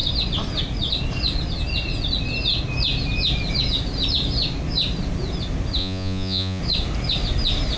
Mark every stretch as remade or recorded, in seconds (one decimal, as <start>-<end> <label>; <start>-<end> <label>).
0.0-5.8 recorded; 5.8-6.6 remade; 6.6-7.8 recorded